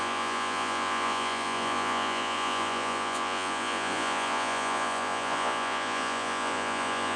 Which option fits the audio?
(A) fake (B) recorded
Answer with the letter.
A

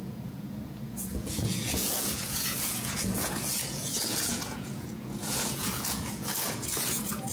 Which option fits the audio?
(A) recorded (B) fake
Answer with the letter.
B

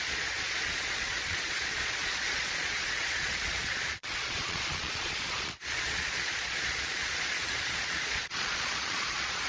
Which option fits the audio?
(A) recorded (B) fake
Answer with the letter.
B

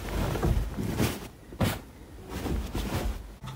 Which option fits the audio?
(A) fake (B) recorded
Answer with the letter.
B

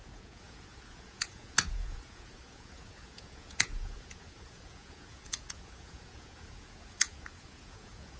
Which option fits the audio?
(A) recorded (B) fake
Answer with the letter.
B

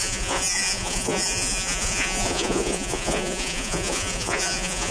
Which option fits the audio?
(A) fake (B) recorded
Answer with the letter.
A